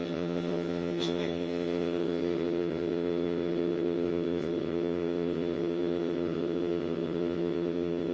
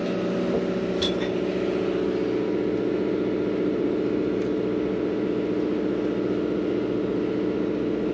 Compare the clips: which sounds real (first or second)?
second